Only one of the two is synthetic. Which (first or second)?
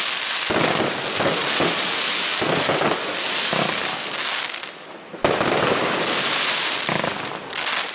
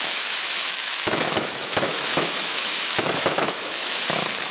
second